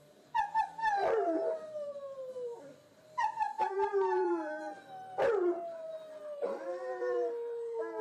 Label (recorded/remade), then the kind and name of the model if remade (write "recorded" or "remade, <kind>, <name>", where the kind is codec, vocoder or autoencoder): remade, vocoder, BigVGAN v2